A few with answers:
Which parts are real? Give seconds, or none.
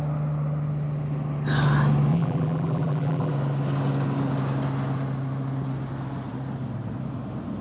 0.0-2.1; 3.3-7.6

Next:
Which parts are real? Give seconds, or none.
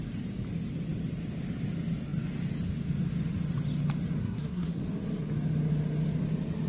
0.0-4.2; 4.8-6.7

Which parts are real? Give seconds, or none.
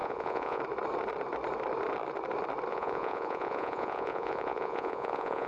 0.6-2.7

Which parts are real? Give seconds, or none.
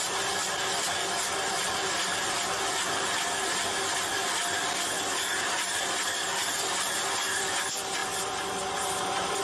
0.0-9.4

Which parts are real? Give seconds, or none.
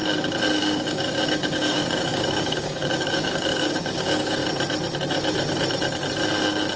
0.0-0.6; 4.4-6.8